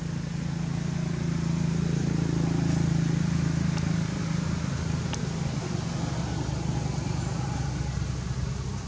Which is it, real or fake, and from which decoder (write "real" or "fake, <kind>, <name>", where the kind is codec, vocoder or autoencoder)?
real